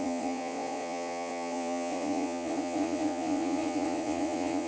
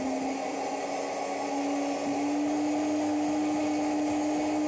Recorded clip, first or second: second